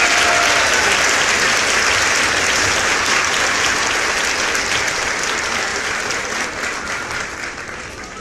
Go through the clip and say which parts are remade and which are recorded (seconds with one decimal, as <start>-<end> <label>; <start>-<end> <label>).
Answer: 0.0-5.7 recorded; 5.7-6.3 remade; 6.3-8.2 recorded